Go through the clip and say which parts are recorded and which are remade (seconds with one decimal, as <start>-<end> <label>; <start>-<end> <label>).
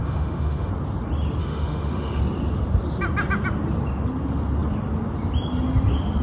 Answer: 0.0-0.7 remade; 0.7-1.4 recorded; 1.4-2.2 remade; 2.2-6.2 recorded